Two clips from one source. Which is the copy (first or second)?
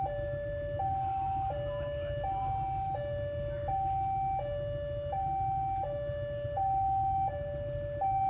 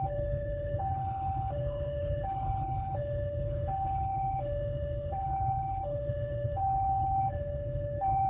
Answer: second